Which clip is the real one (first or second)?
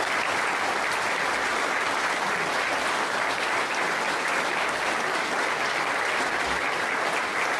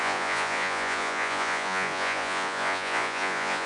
first